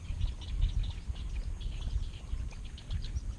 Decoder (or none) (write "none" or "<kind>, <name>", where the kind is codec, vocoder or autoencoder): none